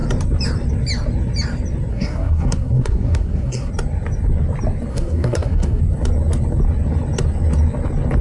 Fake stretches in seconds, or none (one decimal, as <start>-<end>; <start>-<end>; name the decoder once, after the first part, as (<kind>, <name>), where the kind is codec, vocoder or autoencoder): 1.9-3.7 (codec, SNAC); 4.9-5.8